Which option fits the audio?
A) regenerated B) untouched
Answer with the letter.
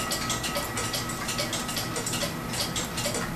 B